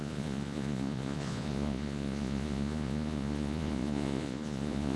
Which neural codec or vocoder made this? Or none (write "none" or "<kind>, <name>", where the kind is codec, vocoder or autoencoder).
vocoder, Vocos